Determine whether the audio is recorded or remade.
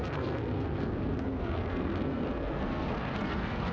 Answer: remade